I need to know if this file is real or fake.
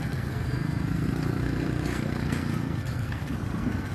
fake